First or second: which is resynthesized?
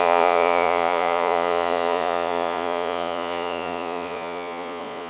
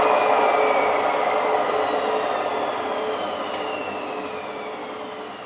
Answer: first